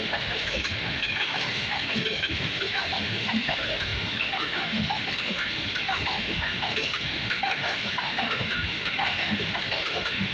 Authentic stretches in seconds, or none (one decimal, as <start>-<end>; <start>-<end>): none